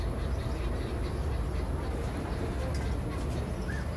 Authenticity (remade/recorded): recorded